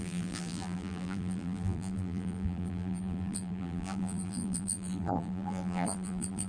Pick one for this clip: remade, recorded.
remade